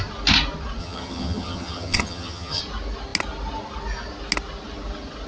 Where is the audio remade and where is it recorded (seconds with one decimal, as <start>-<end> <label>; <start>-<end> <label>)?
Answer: 0.0-0.8 recorded; 0.8-2.6 remade; 2.6-5.3 recorded